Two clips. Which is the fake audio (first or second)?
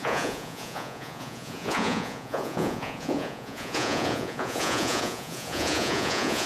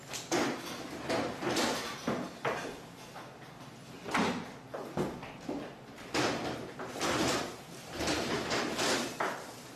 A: first